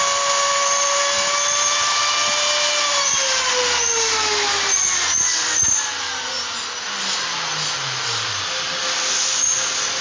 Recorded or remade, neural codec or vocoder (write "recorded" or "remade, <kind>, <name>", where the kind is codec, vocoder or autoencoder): remade, vocoder, BigVGAN v2